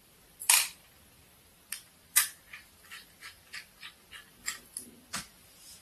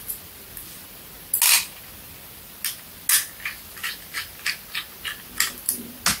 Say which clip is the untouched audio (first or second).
second